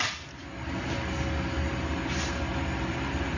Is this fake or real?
real